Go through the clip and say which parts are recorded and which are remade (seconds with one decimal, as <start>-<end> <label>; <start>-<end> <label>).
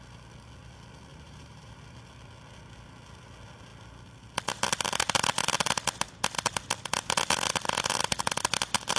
0.0-1.1 recorded; 1.1-1.8 remade; 1.8-9.0 recorded